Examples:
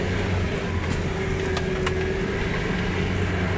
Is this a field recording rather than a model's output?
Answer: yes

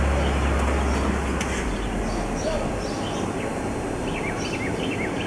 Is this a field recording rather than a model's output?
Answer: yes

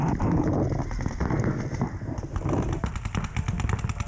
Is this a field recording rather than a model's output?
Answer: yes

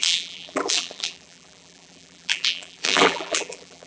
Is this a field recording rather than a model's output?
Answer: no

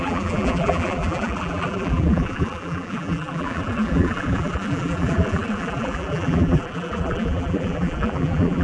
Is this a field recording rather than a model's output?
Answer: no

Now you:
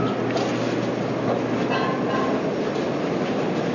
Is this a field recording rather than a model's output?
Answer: yes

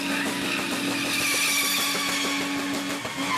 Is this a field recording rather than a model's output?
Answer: yes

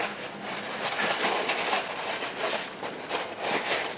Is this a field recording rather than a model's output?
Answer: yes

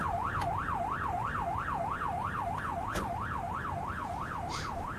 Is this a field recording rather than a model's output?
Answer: no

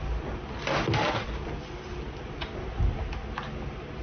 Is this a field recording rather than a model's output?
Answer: yes